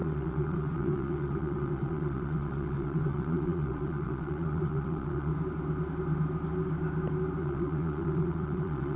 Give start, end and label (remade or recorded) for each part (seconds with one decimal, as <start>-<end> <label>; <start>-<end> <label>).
0.0-5.3 remade; 5.3-7.4 recorded; 7.4-9.0 remade